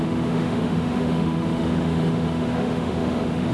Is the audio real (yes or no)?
no